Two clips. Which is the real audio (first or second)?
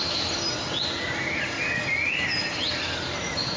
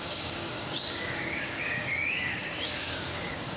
first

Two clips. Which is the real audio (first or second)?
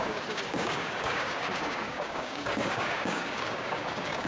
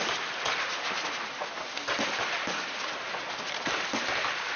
second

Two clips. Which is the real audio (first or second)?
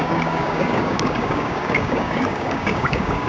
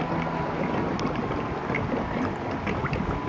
second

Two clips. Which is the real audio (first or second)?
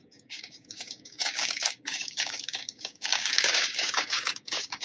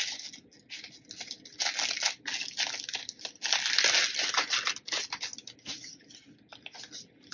second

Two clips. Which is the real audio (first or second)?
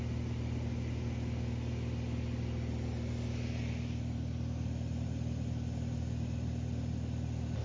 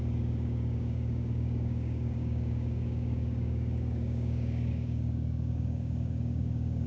first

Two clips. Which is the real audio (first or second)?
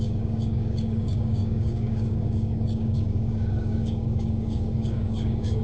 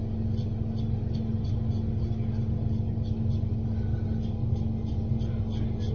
second